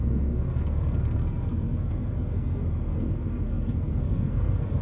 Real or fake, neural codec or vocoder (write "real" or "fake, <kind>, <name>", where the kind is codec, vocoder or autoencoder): fake, codec, SNAC